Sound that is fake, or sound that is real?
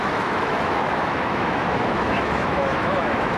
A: fake